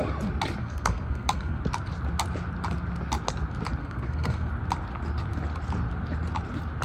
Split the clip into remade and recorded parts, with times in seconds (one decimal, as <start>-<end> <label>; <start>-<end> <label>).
0.0-0.6 recorded; 0.6-1.6 remade; 1.6-3.8 recorded; 3.8-4.5 remade; 4.5-6.8 recorded